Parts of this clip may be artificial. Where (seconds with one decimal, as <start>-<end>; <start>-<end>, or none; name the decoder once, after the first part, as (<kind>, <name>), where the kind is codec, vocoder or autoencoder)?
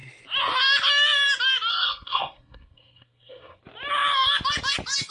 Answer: 1.7-3.6 (codec, SNAC)